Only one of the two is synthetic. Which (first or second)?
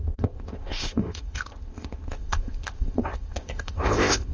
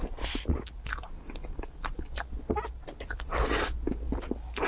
first